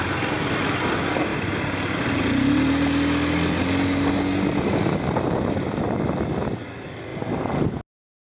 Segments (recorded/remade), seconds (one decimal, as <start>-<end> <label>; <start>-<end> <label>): 0.0-8.2 recorded